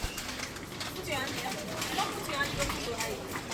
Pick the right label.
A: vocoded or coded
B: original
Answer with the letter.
A